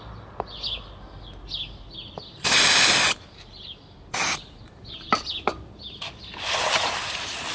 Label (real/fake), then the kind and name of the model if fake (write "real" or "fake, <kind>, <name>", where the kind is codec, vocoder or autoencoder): real